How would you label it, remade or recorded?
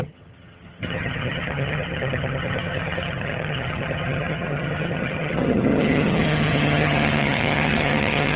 remade